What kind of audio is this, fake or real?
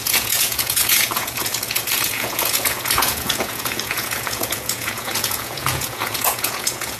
fake